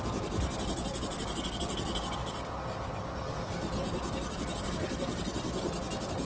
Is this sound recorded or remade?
recorded